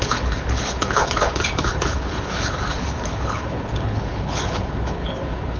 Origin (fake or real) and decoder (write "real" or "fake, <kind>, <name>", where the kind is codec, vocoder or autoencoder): fake, codec, HILCodec